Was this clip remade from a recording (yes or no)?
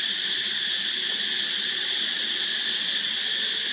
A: yes